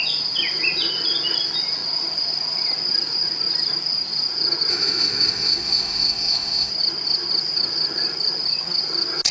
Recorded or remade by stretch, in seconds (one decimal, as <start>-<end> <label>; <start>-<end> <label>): 0.0-4.7 recorded; 4.7-6.7 remade; 6.7-9.3 recorded